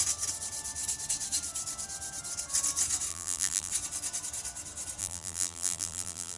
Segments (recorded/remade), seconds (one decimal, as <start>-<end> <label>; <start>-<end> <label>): 0.0-3.1 recorded; 3.1-3.7 remade; 3.7-5.0 recorded; 5.0-6.4 remade